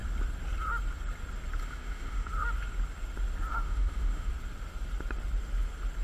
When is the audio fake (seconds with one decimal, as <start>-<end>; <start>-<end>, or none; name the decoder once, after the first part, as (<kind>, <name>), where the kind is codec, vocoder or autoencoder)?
1.6-2.3 (autoencoder, DAC-VAE); 3.5-4.3